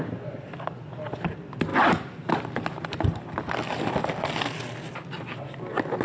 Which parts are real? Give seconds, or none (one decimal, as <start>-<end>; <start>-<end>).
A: 0.0-6.0